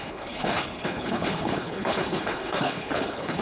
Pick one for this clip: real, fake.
fake